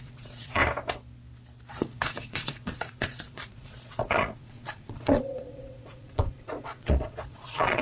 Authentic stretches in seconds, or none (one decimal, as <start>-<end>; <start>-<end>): 0.6-1.7